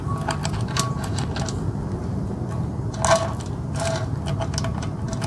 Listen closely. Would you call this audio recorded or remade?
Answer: recorded